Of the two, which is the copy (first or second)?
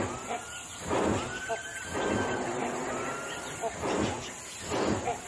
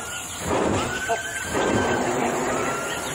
second